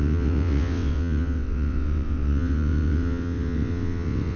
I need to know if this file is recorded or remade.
remade